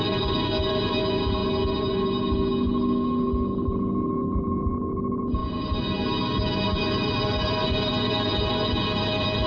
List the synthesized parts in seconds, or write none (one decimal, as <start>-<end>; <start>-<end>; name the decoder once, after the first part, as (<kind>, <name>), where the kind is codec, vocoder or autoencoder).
none